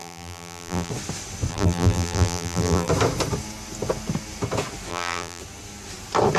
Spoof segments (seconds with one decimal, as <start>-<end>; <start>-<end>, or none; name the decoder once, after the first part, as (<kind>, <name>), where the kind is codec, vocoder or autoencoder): 0.0-0.9 (vocoder, BigVGAN v2); 1.5-2.9; 4.9-5.4

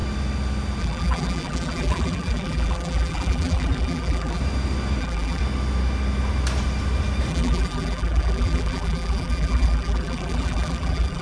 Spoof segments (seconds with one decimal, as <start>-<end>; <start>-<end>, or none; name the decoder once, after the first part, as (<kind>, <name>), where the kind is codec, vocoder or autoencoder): 0.8-4.4 (vocoder, BigVGAN v2); 5.0-5.4; 7.3-11.2

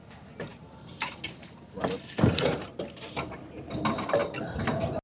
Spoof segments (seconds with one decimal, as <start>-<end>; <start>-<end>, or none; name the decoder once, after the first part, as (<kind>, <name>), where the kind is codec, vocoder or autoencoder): 0.5-3.5 (vocoder, BigVGAN v2); 4.2-5.0

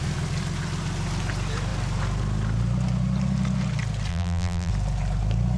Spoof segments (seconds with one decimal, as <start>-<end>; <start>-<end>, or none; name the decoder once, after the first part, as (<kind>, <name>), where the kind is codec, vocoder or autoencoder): 4.1-4.7 (vocoder, BigVGAN v2)

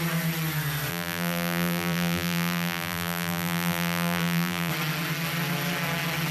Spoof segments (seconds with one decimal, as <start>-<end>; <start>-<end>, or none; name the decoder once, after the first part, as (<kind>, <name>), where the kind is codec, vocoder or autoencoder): 0.9-4.7 (vocoder, BigVGAN v2)

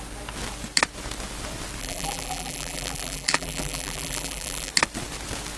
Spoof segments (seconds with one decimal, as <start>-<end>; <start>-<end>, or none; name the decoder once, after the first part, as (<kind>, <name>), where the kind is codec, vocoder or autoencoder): 1.8-4.7 (vocoder, BigVGAN v2)